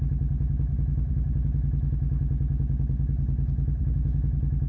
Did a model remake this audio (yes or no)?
no